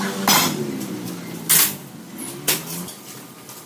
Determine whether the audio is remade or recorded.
recorded